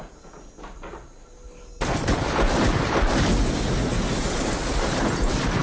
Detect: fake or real real